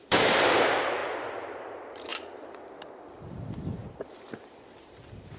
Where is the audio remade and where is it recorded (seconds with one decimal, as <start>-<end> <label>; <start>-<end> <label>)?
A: 0.0-1.0 remade; 1.0-1.7 recorded; 1.7-2.1 remade; 2.1-3.4 recorded; 3.4-3.8 remade; 3.8-4.4 recorded; 4.4-5.4 remade

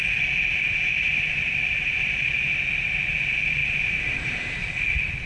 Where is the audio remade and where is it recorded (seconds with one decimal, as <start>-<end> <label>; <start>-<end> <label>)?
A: 0.0-0.5 recorded; 0.5-2.1 remade; 2.1-3.6 recorded; 3.6-4.6 remade; 4.6-5.3 recorded